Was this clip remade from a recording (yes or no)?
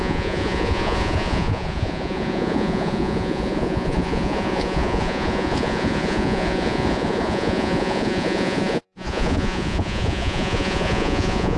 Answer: yes